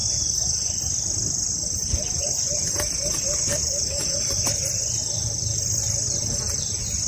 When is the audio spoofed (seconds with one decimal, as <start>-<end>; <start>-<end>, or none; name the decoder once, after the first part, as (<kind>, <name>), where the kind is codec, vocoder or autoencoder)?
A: 0.0-7.1 (vocoder, BigVGAN v2)